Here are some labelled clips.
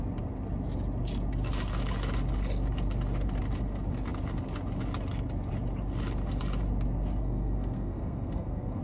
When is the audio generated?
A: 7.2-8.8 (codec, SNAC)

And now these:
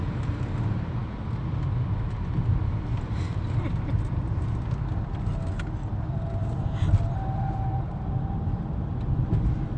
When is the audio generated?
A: none

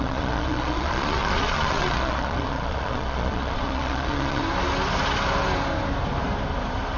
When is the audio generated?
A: 0.0-4.4 (vocoder, Vocos)

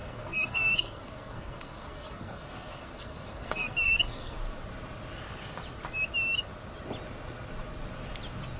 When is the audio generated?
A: 0.0-4.4 (codec, SNAC)

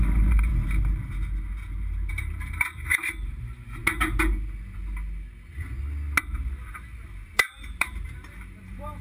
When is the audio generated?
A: 0.0-0.5 (vocoder, BigVGAN v2); 2.1-3.8; 6.2-9.0

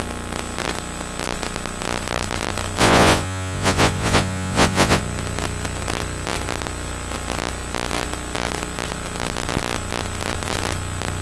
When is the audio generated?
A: 2.8-5.0 (vocoder, Vocos)

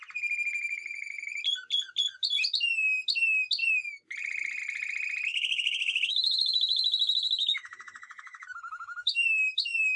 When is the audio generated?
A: 5.3-10.0 (autoencoder, DAC-VAE)